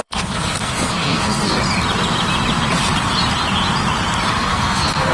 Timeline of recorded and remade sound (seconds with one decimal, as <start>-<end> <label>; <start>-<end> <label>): 0.0-1.6 remade; 1.6-4.3 recorded; 4.3-5.1 remade